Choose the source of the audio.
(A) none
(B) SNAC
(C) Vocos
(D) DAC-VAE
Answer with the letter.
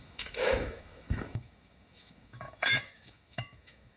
D